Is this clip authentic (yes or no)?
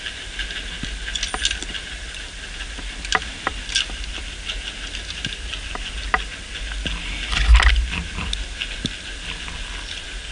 yes